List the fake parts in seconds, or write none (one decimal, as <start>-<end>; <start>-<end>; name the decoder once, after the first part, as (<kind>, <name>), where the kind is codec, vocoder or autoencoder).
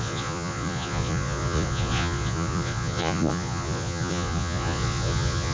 0.0-5.5 (vocoder, Vocos)